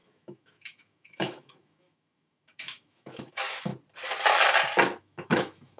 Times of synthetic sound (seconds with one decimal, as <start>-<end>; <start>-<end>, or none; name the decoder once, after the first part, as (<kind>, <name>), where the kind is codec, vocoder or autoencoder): 0.0-3.7 (autoencoder, DAC-VAE); 5.0-5.8